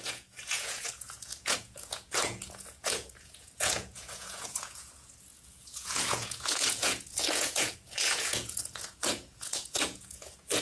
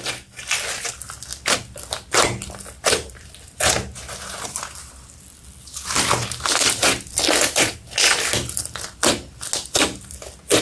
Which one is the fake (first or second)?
first